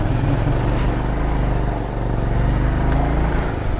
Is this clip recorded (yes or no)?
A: yes